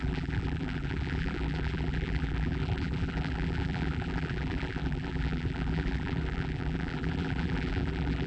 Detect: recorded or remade remade